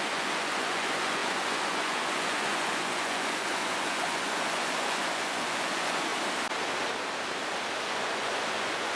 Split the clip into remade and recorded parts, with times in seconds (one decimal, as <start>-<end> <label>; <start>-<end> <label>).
0.0-6.1 remade; 6.1-7.8 recorded; 7.8-9.0 remade